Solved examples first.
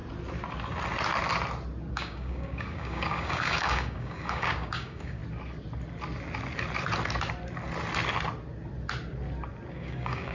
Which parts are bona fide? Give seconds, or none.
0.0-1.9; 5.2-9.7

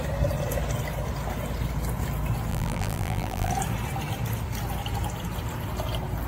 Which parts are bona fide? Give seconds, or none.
0.0-2.5; 3.5-6.3